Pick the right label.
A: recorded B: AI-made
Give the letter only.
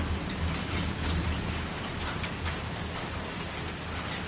A